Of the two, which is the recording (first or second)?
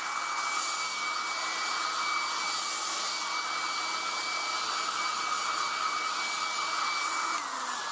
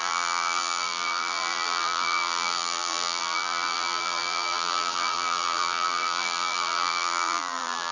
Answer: first